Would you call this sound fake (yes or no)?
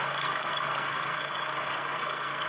yes